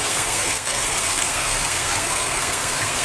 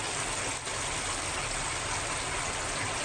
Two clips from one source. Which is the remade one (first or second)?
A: first